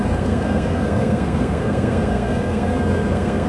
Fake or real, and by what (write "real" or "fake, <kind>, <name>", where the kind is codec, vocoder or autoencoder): fake, codec, SNAC